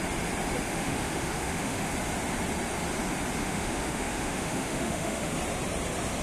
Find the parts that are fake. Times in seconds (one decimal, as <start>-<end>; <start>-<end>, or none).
0.7-1.9; 3.4-5.3